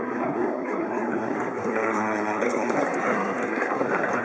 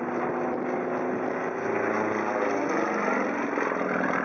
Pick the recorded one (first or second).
second